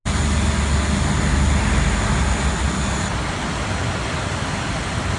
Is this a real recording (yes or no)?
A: yes